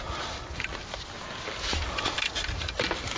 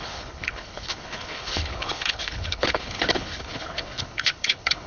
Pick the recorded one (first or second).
first